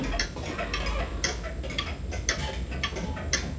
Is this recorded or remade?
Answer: recorded